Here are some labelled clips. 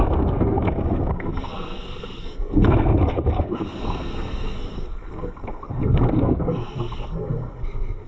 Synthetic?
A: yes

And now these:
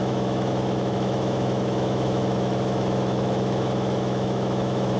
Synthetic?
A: yes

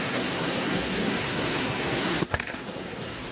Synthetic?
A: yes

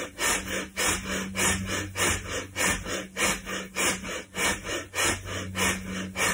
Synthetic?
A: no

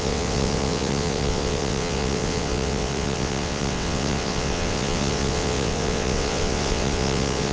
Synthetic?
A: yes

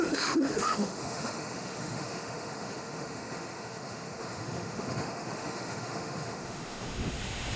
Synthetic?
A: yes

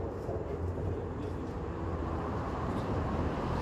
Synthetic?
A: yes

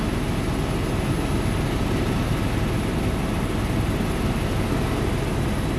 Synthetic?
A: no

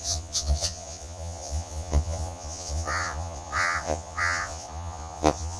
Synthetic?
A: yes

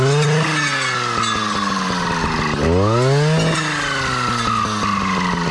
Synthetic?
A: no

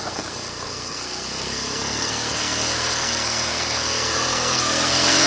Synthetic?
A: yes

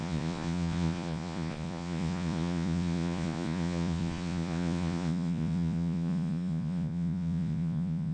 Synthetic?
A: yes